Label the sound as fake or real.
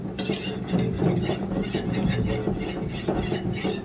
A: real